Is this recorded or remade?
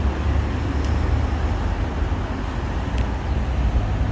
recorded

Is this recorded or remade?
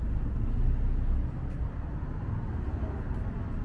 recorded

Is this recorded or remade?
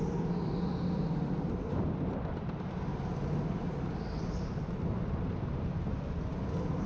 recorded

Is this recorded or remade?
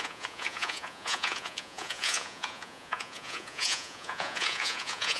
remade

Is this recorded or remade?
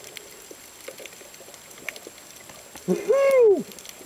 recorded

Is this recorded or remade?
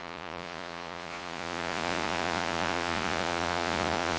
remade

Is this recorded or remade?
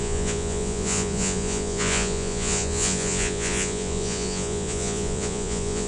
remade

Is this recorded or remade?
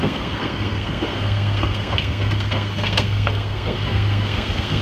remade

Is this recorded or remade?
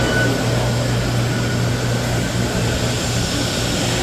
recorded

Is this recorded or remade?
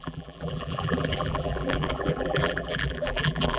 remade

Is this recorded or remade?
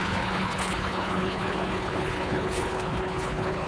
remade